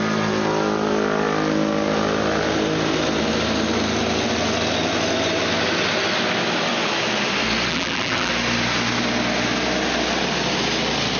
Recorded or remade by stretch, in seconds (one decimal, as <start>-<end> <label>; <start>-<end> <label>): 0.0-7.7 recorded; 7.7-8.3 remade; 8.3-11.2 recorded